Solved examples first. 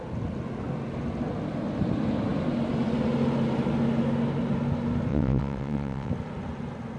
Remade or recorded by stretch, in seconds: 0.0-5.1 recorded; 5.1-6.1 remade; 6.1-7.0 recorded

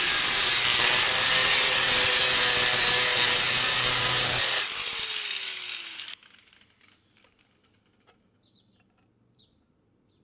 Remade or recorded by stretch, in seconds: 0.0-1.4 recorded; 1.4-2.2 remade; 2.2-10.2 recorded

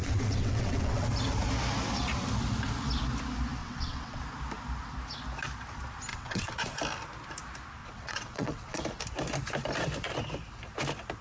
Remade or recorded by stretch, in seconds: 0.0-1.1 remade; 1.1-3.6 recorded; 3.6-4.2 remade; 4.2-6.1 recorded; 6.1-6.7 remade; 6.7-7.8 recorded; 7.8-8.8 remade; 8.8-11.2 recorded

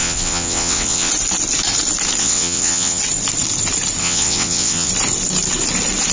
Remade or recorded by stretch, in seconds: 0.0-1.1 remade; 1.1-2.2 recorded; 2.2-3.0 remade; 3.0-4.0 recorded; 4.0-4.9 remade; 4.9-6.1 recorded